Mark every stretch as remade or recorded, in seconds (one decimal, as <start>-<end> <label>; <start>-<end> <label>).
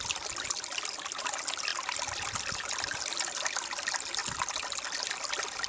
0.0-5.7 recorded